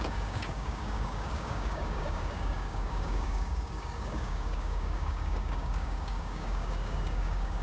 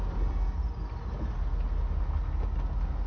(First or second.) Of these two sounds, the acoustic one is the second